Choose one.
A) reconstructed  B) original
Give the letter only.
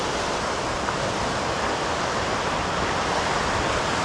B